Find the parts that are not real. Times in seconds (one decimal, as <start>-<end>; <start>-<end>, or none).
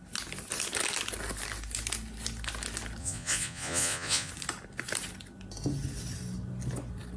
3.0-4.3